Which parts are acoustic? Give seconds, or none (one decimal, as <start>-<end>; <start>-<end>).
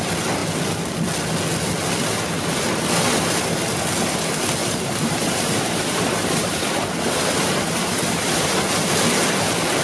0.0-4.6; 8.9-9.8